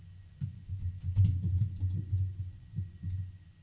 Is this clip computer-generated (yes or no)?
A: yes